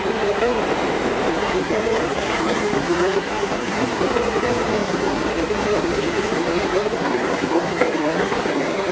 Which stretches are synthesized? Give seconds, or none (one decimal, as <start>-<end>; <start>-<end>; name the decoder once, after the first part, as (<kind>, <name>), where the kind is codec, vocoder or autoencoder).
0.0-0.6 (codec, SNAC); 1.3-8.9